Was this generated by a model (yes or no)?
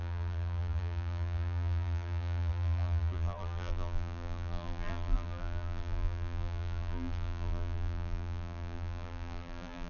yes